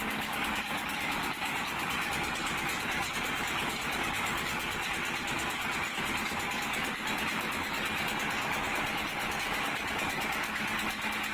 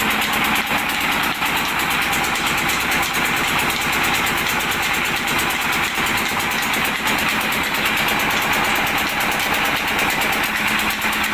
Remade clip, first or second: first